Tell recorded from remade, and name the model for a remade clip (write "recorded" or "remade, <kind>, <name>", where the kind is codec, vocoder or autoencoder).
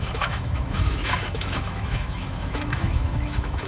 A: remade, autoencoder, DAC-VAE